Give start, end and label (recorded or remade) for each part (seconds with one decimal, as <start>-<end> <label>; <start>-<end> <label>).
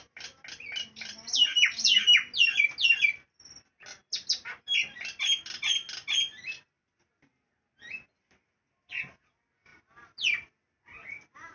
0.0-11.5 recorded